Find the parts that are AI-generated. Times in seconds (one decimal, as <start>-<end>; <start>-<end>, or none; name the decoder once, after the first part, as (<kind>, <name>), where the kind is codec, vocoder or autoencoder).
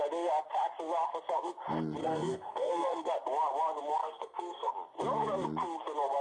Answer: 2.0-3.1 (codec, SNAC); 4.0-4.7